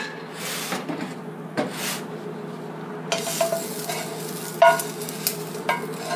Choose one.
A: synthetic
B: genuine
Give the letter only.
B